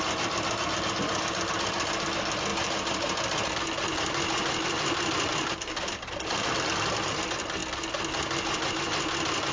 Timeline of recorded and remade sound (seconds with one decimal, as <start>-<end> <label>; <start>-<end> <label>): 0.0-2.5 recorded; 2.5-6.9 remade; 6.9-9.5 recorded